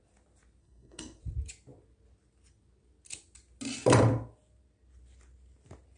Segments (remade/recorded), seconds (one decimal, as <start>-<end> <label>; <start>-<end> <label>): 0.0-0.6 recorded; 0.6-1.2 remade; 1.2-6.0 recorded